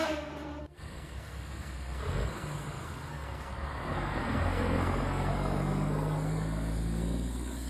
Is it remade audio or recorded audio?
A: remade